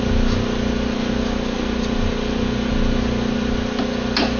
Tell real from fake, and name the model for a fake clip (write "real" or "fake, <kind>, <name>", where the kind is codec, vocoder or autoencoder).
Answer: real